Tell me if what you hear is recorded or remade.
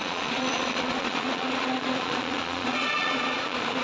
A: remade